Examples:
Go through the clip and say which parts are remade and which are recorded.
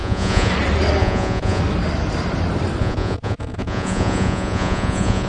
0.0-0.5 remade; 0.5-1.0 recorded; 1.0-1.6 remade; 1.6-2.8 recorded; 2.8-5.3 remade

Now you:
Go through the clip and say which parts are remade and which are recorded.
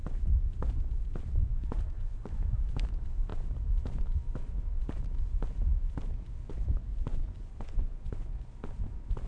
0.0-1.4 recorded; 1.4-2.3 remade; 2.3-6.9 recorded; 6.9-8.5 remade; 8.5-9.3 recorded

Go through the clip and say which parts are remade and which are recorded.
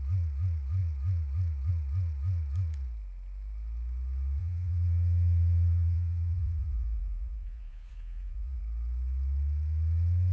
0.0-4.4 recorded; 4.4-8.6 remade; 8.6-10.3 recorded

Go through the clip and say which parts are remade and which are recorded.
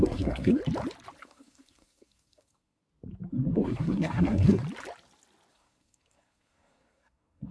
0.0-0.6 remade; 0.6-1.2 recorded; 1.2-2.8 remade; 2.8-3.3 recorded; 3.3-4.6 remade; 4.6-5.5 recorded; 5.5-7.5 remade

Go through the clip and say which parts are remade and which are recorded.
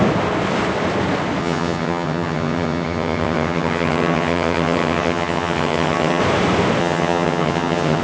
0.0-1.4 recorded; 1.4-6.2 remade; 6.2-6.8 recorded; 6.8-8.0 remade